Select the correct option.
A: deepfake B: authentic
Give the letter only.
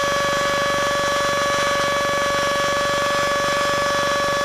B